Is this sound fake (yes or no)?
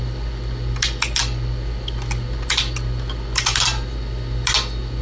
no